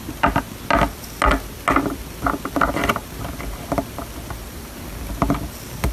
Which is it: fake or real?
real